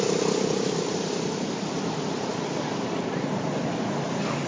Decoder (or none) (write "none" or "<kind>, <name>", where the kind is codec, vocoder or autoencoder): none